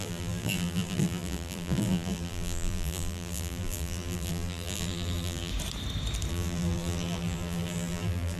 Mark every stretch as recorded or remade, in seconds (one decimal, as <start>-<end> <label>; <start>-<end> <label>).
0.0-5.5 remade; 5.5-6.3 recorded; 6.3-8.4 remade